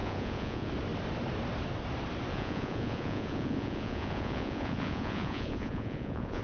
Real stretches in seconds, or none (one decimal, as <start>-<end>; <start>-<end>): 0.7-2.3